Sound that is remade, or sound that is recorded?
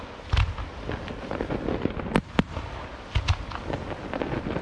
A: recorded